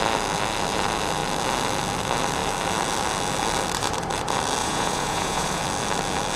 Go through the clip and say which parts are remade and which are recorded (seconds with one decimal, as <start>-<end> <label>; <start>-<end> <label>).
0.0-4.6 recorded; 4.6-5.6 remade; 5.6-6.4 recorded